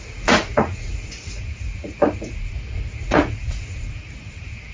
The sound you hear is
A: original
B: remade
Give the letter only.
B